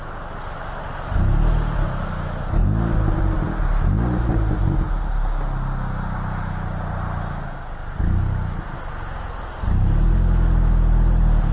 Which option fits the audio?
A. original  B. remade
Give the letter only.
A